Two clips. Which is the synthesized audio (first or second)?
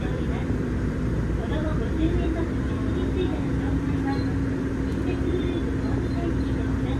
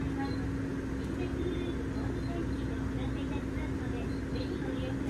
first